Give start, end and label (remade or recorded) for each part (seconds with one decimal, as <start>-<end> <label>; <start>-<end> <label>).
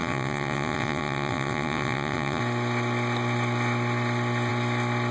0.0-2.4 remade; 2.4-5.1 recorded